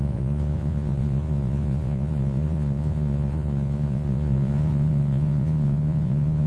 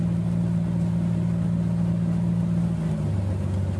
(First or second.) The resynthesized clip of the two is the first